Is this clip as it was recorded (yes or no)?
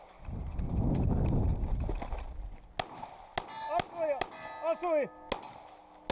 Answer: yes